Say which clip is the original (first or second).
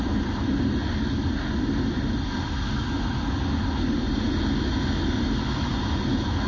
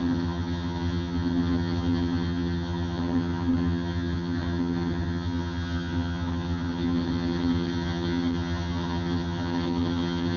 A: first